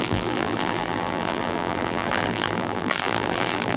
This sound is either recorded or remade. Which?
remade